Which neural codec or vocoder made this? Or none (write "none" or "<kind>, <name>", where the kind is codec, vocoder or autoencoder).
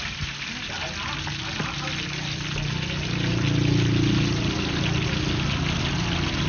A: none